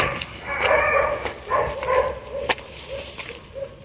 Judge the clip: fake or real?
real